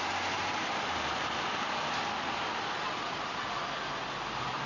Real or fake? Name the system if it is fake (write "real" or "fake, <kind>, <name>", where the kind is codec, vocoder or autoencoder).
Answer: real